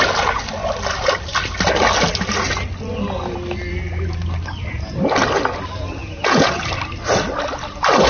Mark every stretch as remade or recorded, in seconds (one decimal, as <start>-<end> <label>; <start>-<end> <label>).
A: 0.0-6.0 recorded; 6.0-6.6 remade; 6.6-8.1 recorded